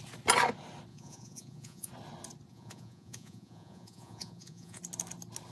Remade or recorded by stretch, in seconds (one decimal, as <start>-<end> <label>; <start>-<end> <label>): 0.0-0.9 recorded; 0.9-1.9 remade; 1.9-2.5 recorded; 2.5-4.8 remade; 4.8-5.5 recorded